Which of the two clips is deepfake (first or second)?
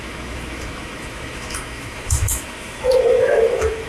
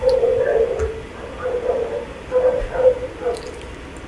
first